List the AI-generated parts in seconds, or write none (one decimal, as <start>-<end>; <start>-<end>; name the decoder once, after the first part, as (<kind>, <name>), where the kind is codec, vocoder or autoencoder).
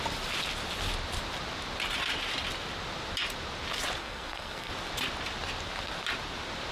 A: 4.0-4.7 (codec, SNAC)